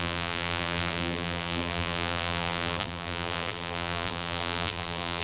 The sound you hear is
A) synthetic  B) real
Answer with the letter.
A